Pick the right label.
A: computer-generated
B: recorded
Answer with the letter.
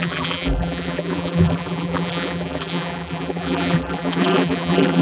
A